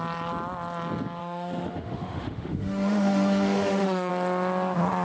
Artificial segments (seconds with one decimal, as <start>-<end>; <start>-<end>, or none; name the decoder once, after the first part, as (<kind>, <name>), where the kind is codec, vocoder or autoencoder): 1.2-4.1 (autoencoder, DAC-VAE)